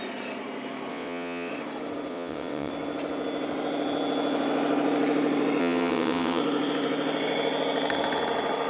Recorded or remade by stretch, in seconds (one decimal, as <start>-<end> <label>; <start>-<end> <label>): 0.0-0.9 recorded; 0.9-1.5 remade; 1.5-2.1 recorded; 2.1-2.7 remade; 2.7-5.6 recorded; 5.6-6.4 remade; 6.4-8.7 recorded